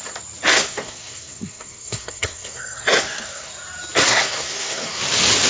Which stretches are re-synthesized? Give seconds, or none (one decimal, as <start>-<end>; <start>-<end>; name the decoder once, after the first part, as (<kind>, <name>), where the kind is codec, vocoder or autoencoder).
0.6-3.5 (codec, SNAC); 4.0-5.0